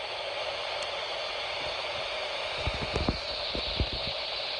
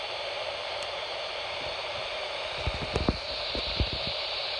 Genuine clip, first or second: first